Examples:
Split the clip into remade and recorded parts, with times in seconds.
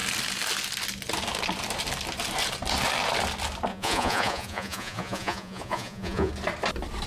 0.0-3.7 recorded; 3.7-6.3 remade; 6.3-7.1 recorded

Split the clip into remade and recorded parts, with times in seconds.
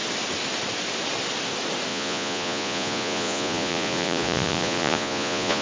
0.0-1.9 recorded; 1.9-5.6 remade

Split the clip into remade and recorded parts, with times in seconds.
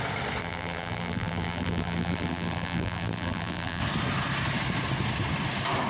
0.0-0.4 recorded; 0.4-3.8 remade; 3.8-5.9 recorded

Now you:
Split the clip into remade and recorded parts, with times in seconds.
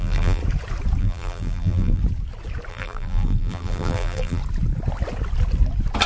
0.0-0.4 remade; 0.4-1.0 recorded; 1.0-2.0 remade; 2.0-2.7 recorded; 2.7-4.4 remade; 4.4-6.1 recorded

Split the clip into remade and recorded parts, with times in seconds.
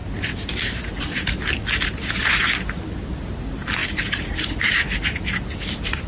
0.0-6.1 recorded